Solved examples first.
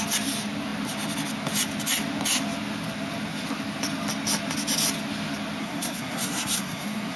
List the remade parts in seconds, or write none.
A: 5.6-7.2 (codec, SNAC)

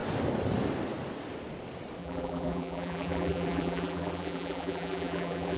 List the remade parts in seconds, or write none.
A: 2.0-5.6 (vocoder, BigVGAN v2)

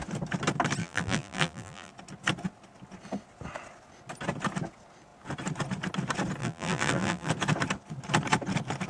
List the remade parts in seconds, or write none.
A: 0.8-1.9 (vocoder, BigVGAN v2); 6.4-7.3

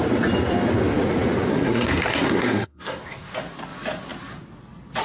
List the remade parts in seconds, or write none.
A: 1.5-3.3 (codec, SNAC)

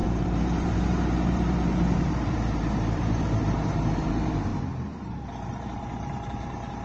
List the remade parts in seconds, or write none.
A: 0.0-4.5 (vocoder, BigVGAN v2); 5.0-6.8